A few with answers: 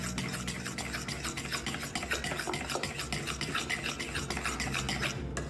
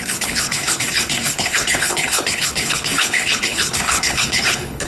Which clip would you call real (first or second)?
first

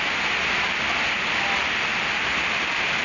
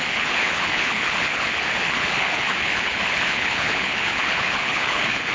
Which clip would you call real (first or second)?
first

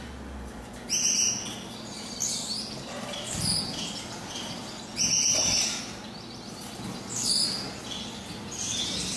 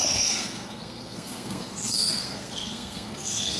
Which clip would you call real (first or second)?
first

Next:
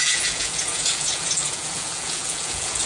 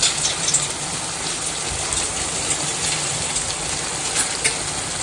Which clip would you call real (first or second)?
second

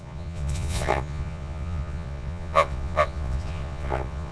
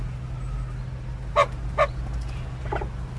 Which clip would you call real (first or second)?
second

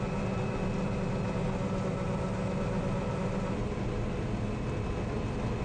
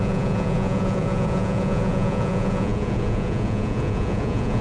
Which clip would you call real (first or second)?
first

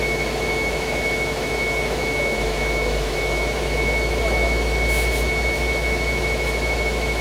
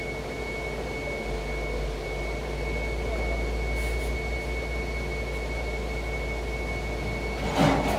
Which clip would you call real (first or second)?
second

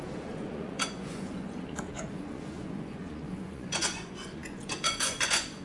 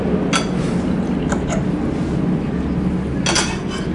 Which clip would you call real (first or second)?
second